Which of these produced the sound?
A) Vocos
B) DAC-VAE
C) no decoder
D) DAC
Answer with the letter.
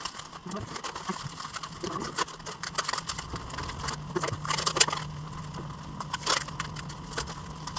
C